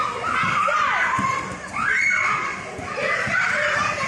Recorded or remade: remade